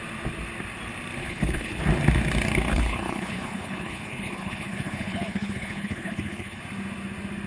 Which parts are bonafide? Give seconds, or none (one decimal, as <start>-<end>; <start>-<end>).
0.0-1.2; 1.8-2.7; 6.6-7.5